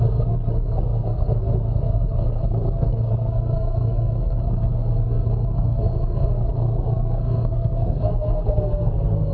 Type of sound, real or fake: fake